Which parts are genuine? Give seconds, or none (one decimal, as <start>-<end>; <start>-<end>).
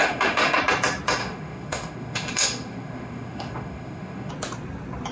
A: 0.6-1.2; 4.3-5.1